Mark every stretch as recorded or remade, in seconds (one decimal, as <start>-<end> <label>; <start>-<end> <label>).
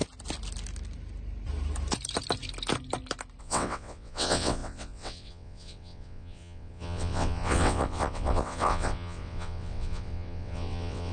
0.0-3.4 recorded; 3.4-11.1 remade